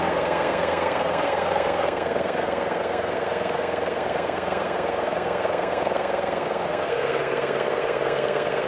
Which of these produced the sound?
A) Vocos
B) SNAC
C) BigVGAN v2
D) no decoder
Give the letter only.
B